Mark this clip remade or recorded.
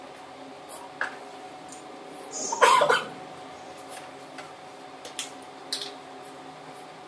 recorded